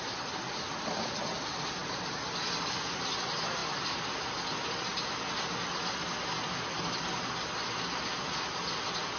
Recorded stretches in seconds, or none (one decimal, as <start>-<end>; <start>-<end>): 0.0-9.2